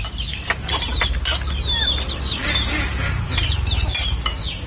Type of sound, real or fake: real